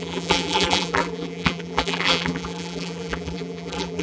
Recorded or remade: remade